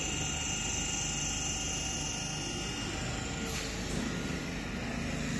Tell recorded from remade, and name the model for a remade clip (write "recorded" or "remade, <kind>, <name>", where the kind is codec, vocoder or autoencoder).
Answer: recorded